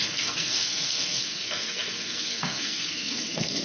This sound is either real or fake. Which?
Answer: fake